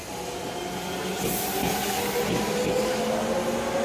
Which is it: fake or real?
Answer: real